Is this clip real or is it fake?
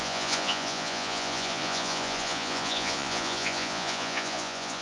fake